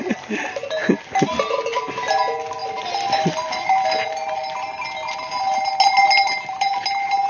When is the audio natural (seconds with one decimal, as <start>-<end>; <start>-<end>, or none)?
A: 0.0-2.6; 5.3-7.3